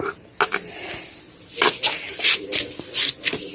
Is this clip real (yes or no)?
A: yes